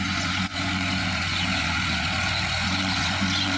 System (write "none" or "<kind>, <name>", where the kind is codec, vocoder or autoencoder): vocoder, Vocos